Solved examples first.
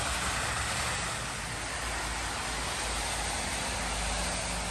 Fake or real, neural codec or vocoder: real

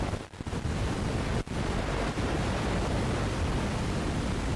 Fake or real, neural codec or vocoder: real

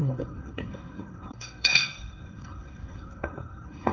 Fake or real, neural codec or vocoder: fake, codec, SNAC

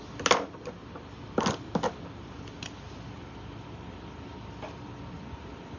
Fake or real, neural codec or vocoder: real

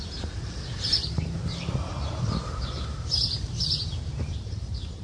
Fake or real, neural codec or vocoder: fake, vocoder, BigVGAN v2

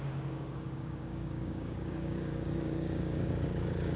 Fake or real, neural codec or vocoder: fake, codec, DAC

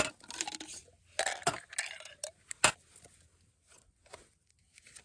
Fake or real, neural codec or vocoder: real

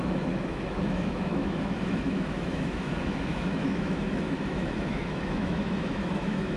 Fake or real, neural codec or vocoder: fake, autoencoder, DAC-VAE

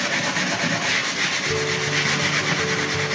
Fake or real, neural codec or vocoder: real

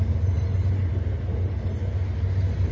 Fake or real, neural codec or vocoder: real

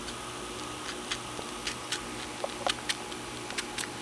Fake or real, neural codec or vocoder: real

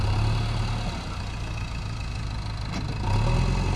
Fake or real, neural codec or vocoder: real